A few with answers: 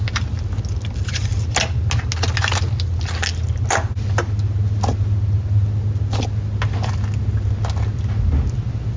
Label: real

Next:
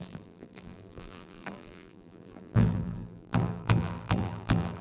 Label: fake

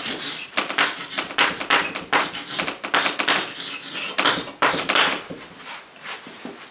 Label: real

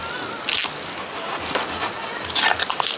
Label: real